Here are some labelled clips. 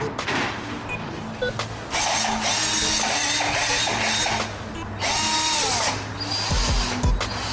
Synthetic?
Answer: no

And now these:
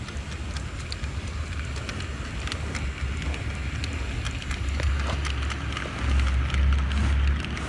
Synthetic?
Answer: no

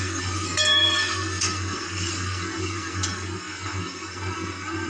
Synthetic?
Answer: yes